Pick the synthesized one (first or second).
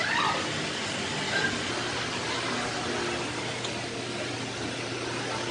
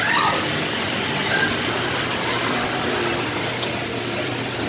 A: second